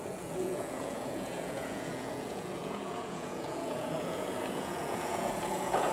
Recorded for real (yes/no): no